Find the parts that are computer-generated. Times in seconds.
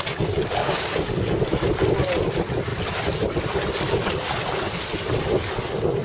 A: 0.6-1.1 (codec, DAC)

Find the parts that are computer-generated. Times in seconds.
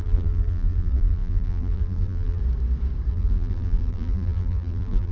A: 0.0-2.4 (vocoder, BigVGAN v2); 3.1-5.1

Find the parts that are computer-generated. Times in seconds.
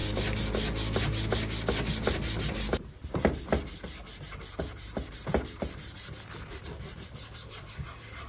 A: 2.4-3.0 (vocoder, BigVGAN v2); 4.6-8.3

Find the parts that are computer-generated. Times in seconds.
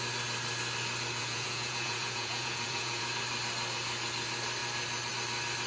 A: 1.2-3.1 (vocoder, Vocos)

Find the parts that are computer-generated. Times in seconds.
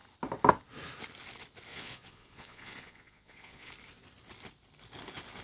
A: 1.7-3.7 (vocoder, Vocos)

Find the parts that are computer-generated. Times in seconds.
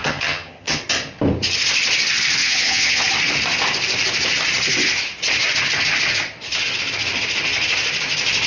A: 0.0-0.8 (vocoder, HiFi-GAN); 2.4-3.0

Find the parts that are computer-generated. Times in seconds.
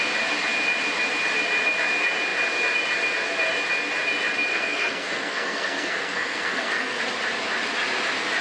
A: 4.5-7.0 (codec, SNAC)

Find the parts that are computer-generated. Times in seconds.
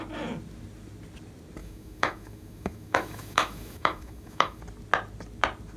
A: 1.6-4.6 (autoencoder, DAC-VAE)